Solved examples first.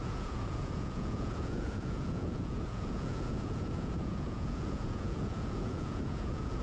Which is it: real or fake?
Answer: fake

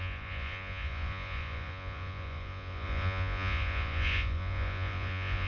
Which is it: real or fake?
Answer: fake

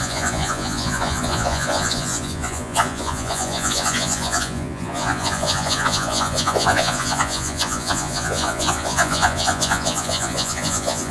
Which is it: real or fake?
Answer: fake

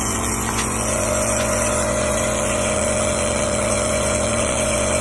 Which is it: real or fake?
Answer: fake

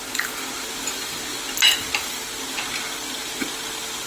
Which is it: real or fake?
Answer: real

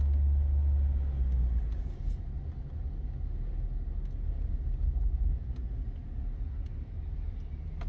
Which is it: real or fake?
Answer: real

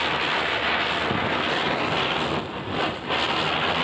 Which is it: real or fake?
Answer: real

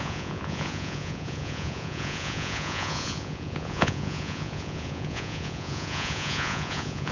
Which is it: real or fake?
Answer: fake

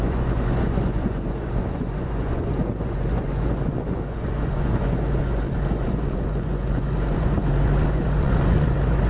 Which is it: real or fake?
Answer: fake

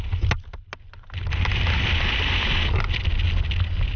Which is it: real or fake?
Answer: real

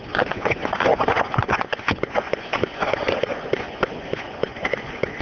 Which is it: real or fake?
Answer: fake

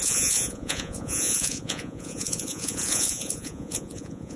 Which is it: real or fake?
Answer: fake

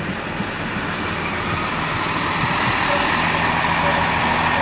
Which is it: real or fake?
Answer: real